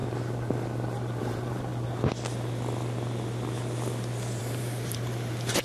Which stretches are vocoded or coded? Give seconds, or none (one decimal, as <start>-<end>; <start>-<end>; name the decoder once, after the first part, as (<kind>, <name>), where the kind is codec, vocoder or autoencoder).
1.2-1.7 (vocoder, BigVGAN v2); 4.4-5.6